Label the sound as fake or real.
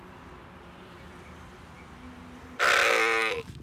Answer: real